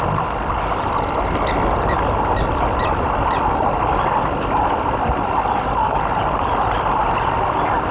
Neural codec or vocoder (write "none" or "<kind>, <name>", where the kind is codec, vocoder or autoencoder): none